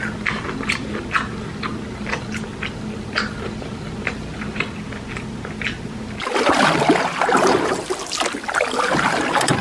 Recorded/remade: recorded